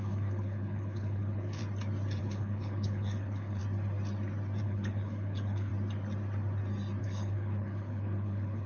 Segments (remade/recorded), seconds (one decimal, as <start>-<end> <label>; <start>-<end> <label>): 0.0-1.6 remade; 1.6-2.2 recorded; 2.2-3.6 remade; 3.6-4.6 recorded; 4.6-5.7 remade; 5.7-7.0 recorded; 7.0-8.7 remade